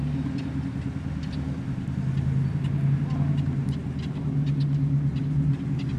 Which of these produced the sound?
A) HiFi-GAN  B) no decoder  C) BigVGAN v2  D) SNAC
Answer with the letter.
B